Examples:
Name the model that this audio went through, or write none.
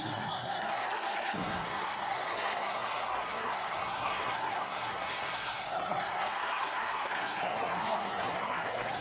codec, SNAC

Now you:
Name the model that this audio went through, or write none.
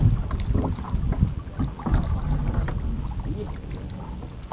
none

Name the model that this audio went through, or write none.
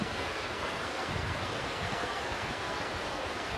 codec, SNAC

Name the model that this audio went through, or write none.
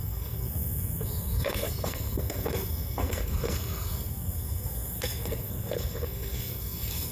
codec, SNAC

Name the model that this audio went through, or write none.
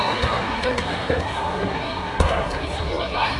codec, SNAC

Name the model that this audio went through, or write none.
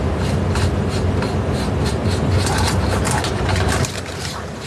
none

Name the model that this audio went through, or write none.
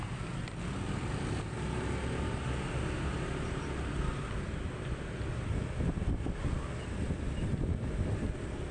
none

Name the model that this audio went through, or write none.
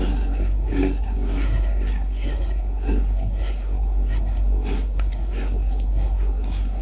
codec, SNAC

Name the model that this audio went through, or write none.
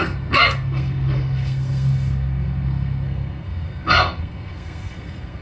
codec, SNAC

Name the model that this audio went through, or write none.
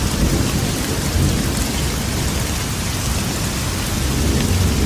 none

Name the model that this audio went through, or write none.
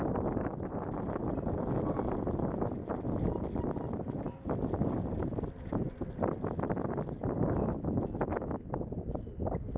none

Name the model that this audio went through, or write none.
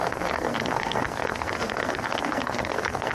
codec, SNAC